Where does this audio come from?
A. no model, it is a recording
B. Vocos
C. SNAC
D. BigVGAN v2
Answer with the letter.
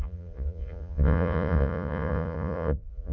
B